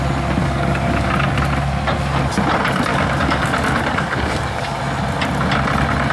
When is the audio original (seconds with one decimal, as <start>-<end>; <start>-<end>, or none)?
0.0-0.4; 1.1-2.9; 4.8-6.1